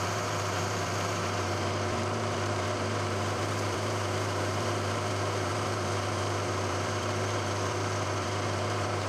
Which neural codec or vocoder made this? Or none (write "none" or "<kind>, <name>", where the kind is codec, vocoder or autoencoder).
vocoder, BigVGAN v2